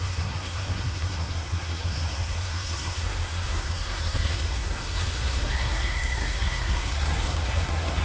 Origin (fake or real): fake